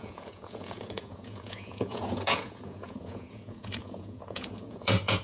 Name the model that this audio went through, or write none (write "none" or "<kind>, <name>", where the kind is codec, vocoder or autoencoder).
vocoder, Vocos